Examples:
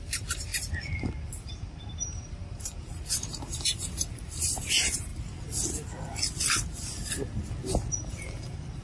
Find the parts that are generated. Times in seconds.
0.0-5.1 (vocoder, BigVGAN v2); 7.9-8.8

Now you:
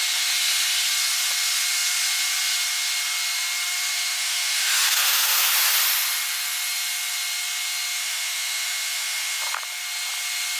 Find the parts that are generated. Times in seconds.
3.9-5.5 (autoencoder, DAC-VAE); 8.0-9.4

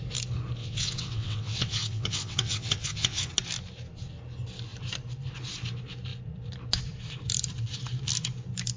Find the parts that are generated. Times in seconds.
0.6-3.3 (vocoder, WaveNeXt)

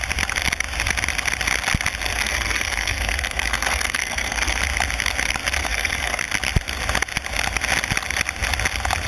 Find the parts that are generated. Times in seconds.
2.1-4.6 (codec, SNAC); 5.6-6.2

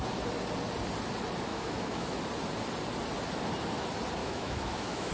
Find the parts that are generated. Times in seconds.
1.5-2.2 (autoencoder, DAC-VAE); 4.2-5.1